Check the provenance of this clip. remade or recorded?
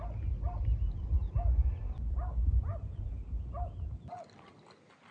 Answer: recorded